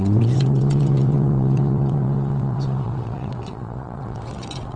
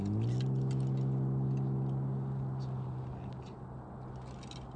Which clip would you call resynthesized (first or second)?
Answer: first